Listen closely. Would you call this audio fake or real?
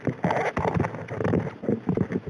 real